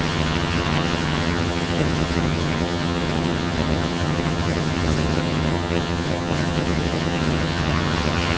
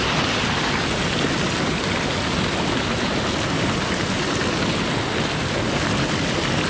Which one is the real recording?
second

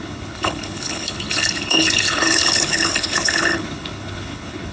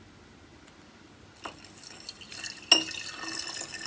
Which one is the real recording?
second